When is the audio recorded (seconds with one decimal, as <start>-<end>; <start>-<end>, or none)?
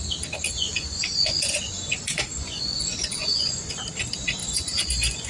0.0-0.6; 3.7-4.4